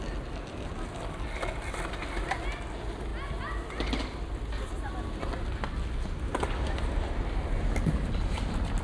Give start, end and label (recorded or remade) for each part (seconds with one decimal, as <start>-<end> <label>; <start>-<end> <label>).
0.0-8.8 recorded

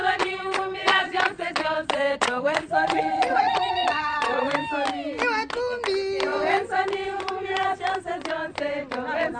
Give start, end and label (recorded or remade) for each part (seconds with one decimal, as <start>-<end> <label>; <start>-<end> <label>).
0.0-4.5 remade; 4.5-9.4 recorded